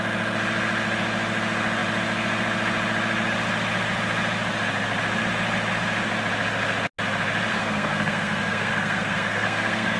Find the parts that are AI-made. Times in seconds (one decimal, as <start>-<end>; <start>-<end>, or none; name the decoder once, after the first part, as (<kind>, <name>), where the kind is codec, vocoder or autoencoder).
7.5-10.0 (codec, SNAC)